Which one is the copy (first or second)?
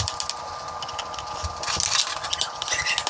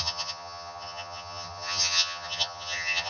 second